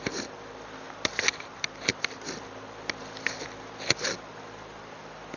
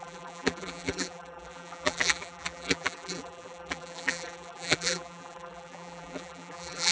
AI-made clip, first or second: second